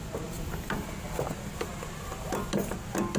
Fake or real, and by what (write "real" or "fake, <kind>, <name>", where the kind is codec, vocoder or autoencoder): real